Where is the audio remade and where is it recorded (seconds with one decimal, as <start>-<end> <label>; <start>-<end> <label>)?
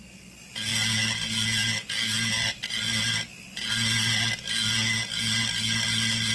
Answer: 0.0-6.3 recorded